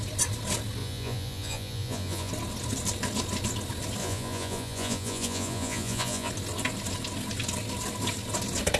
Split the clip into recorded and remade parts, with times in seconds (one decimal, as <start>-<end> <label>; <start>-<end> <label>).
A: 0.0-0.8 recorded; 0.8-2.3 remade; 2.3-4.0 recorded; 4.0-6.3 remade; 6.3-8.8 recorded